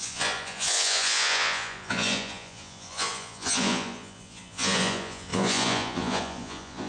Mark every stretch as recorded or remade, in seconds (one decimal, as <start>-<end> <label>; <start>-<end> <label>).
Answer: 0.0-6.9 remade

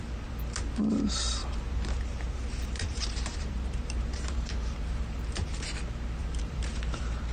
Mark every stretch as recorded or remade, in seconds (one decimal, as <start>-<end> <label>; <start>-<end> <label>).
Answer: 0.0-1.4 recorded; 1.4-5.8 remade; 5.8-6.2 recorded; 6.2-6.8 remade; 6.8-7.3 recorded

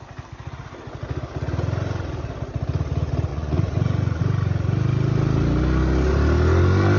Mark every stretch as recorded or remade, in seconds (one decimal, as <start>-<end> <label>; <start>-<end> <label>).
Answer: 0.0-3.3 recorded; 3.3-4.2 remade; 4.2-7.0 recorded

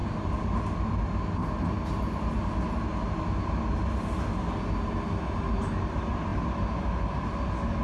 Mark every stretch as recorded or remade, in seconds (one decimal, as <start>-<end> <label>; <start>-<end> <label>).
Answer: 0.0-7.8 recorded

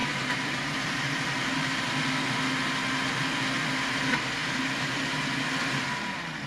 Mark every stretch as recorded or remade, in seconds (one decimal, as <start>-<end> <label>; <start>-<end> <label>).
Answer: 0.0-1.9 remade; 1.9-4.4 recorded; 4.4-5.5 remade; 5.5-6.5 recorded

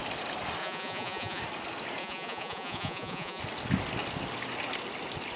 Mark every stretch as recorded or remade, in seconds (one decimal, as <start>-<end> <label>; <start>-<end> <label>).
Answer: 0.0-0.6 recorded; 0.6-1.4 remade; 1.4-2.0 recorded; 2.0-3.4 remade; 3.4-5.4 recorded